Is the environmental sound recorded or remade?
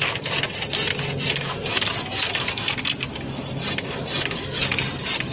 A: recorded